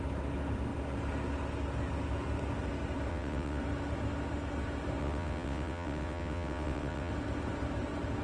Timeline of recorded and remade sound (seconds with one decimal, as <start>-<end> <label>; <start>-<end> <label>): 0.0-3.1 recorded; 3.1-3.6 remade; 3.6-5.0 recorded; 5.0-7.1 remade; 7.1-8.2 recorded